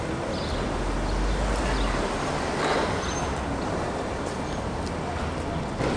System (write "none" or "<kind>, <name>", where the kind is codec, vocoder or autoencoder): none